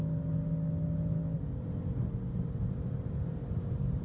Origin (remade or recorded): recorded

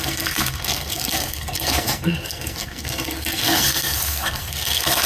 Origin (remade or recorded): remade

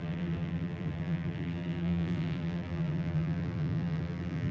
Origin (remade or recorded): remade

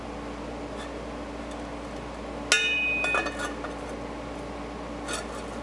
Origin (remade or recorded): recorded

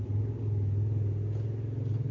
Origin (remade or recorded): recorded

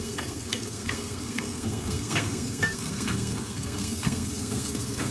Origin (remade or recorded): remade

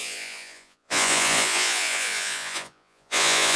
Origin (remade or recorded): remade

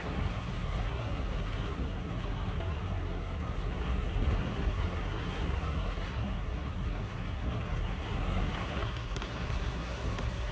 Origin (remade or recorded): remade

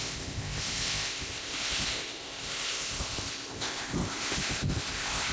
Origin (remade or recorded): remade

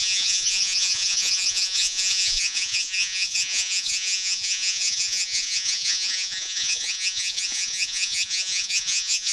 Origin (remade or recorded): remade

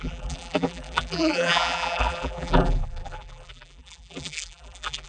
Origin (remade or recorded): remade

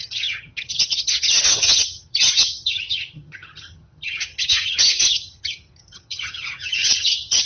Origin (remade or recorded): remade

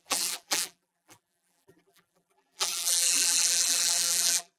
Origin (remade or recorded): remade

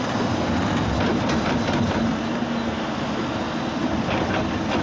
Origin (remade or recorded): recorded